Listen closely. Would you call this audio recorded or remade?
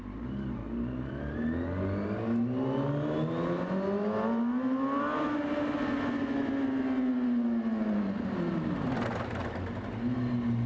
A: recorded